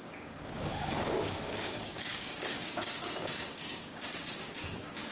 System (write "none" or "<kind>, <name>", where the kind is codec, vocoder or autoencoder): codec, DAC